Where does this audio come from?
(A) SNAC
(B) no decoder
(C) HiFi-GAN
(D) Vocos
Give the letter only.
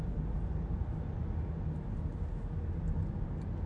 B